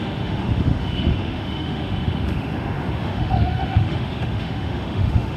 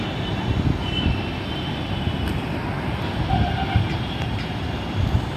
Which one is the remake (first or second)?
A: first